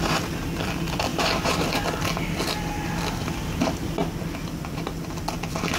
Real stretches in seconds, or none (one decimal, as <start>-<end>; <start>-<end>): 0.0-5.8